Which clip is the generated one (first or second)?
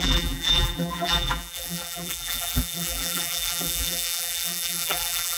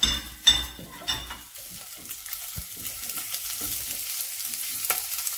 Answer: first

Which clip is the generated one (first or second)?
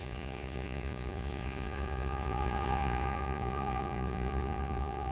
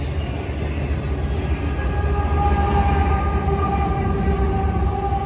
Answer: first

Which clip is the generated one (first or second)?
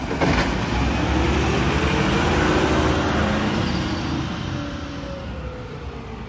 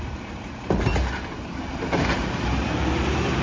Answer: second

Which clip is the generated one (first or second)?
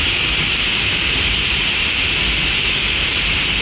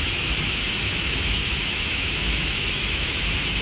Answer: second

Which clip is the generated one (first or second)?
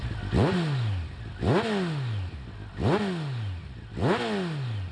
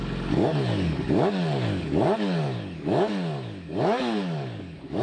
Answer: second